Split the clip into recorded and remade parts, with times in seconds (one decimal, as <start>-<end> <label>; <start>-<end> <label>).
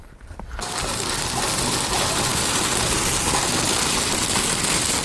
0.0-5.0 recorded